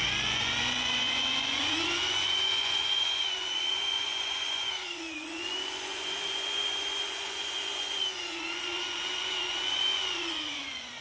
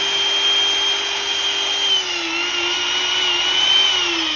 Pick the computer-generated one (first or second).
first